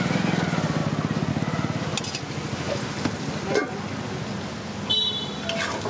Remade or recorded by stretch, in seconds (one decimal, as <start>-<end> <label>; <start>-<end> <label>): 0.0-5.9 recorded